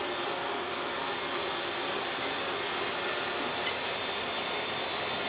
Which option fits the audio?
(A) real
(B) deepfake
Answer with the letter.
A